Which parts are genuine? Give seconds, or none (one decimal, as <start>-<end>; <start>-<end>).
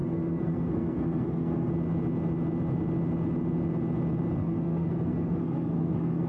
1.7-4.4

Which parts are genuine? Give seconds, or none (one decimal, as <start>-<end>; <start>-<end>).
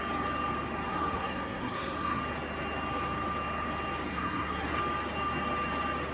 0.0-0.9; 2.2-4.1; 4.8-6.1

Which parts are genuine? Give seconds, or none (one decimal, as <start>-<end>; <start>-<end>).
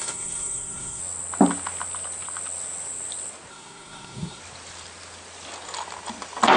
1.0-3.5; 4.4-6.6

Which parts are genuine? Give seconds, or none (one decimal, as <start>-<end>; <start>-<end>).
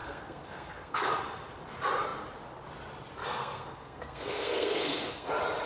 1.2-3.2; 5.3-5.7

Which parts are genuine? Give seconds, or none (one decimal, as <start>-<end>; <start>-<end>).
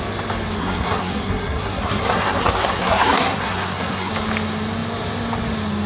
0.0-0.6; 4.1-5.9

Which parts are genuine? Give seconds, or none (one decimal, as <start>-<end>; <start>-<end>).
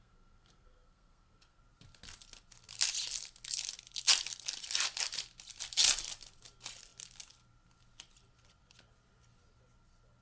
1.6-10.2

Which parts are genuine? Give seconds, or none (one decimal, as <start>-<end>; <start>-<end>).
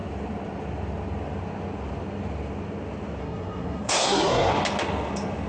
0.0-3.2; 4.5-5.5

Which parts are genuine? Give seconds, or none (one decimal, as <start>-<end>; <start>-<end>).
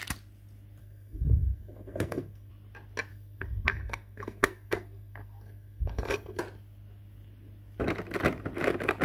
0.0-0.8; 2.5-3.1; 6.4-9.0